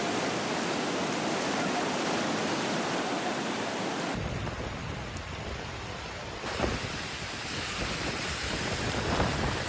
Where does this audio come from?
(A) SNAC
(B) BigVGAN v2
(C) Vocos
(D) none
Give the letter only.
D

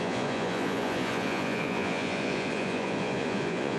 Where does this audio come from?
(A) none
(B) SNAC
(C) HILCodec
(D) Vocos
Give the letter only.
D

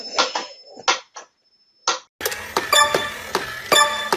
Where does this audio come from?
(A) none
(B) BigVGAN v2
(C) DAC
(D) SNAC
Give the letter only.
A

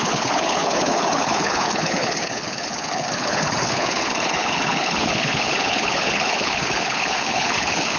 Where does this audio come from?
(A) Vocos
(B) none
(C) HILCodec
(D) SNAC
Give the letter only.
C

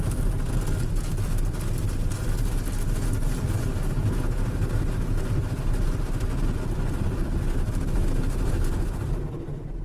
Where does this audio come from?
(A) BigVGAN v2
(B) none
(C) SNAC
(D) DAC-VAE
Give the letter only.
B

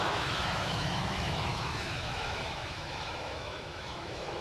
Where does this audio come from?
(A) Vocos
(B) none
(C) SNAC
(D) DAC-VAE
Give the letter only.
D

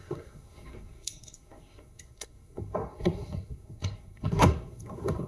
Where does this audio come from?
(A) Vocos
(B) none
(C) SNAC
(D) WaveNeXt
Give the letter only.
C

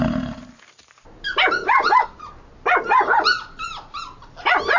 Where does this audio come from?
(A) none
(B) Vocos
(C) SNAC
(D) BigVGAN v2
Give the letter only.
A